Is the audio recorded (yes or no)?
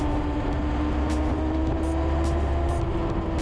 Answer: yes